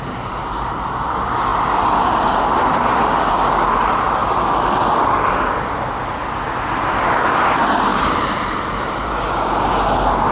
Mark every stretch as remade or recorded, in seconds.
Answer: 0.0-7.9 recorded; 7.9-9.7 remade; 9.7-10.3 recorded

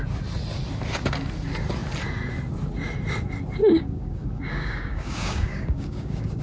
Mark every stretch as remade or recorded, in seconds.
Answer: 0.0-3.6 recorded; 3.6-6.4 remade

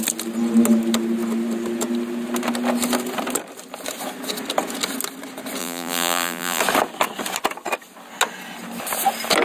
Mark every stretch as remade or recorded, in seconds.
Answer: 0.0-5.6 recorded; 5.6-6.6 remade; 6.6-9.4 recorded

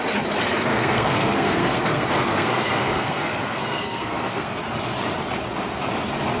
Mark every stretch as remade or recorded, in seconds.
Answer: 0.0-0.7 recorded; 0.7-4.5 remade; 4.5-6.4 recorded

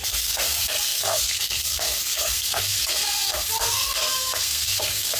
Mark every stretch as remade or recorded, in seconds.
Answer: 0.0-5.2 remade

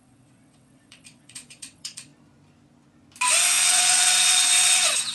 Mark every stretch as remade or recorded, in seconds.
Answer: 0.0-2.1 remade; 2.1-3.6 recorded; 3.6-5.1 remade

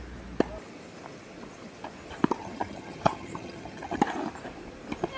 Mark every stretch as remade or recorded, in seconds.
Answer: 0.0-2.4 recorded; 2.4-4.0 remade; 4.0-5.2 recorded